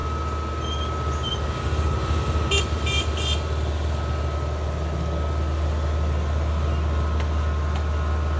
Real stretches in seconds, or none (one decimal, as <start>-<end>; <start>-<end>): 0.0-8.4